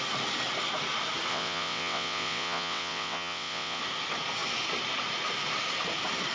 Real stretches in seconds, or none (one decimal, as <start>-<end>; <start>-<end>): 0.0-1.3; 3.8-6.3